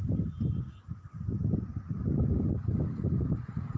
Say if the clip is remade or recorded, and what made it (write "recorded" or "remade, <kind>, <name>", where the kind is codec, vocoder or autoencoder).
remade, vocoder, BigVGAN v2